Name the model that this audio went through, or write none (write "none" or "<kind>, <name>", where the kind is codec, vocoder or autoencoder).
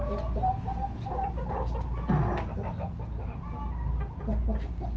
none